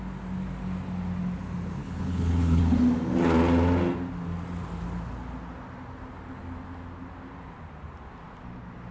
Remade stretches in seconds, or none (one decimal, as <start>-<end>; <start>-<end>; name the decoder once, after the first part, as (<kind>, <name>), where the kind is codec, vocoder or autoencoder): 1.8-2.6 (codec, HILCodec)